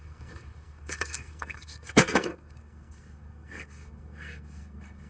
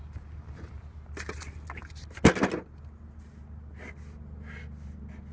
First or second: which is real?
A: second